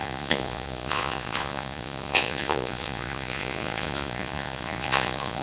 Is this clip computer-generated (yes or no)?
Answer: yes